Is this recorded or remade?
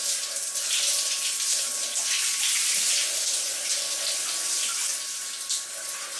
recorded